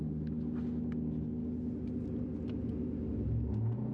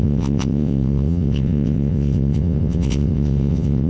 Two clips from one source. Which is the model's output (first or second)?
second